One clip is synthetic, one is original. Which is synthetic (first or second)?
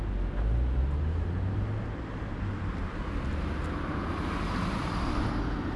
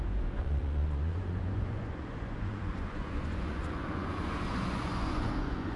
second